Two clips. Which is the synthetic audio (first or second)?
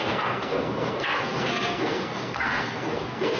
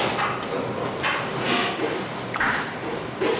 first